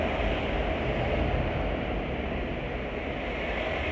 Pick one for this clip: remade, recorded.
recorded